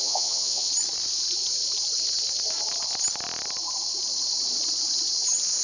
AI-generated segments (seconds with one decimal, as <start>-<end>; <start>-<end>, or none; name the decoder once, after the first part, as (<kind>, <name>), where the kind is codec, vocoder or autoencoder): 0.0-0.7 (vocoder, Vocos)